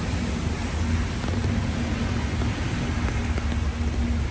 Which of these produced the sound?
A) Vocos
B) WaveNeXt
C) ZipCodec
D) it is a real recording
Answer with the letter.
D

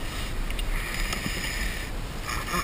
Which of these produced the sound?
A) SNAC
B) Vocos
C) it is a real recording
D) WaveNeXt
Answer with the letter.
C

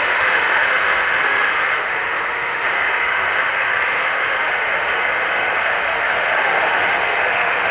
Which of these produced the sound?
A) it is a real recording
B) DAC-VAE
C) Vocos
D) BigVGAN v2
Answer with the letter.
B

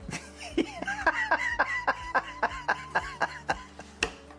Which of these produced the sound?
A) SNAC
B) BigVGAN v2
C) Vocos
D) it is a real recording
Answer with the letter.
D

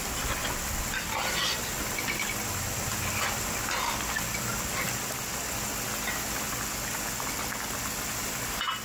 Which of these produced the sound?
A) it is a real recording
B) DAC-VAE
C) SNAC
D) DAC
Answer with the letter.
A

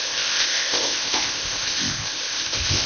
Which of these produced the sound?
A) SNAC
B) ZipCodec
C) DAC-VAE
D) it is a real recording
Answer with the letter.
B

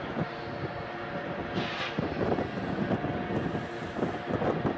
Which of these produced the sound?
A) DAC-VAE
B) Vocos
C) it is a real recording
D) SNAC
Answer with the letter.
C